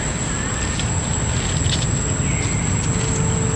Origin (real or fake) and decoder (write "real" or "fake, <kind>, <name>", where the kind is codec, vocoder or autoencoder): real